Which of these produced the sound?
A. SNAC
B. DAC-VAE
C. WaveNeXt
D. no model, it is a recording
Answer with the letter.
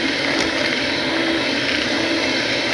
D